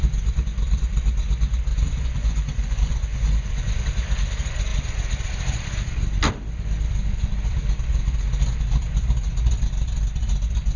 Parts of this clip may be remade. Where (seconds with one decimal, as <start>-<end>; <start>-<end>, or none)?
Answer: 1.7-3.8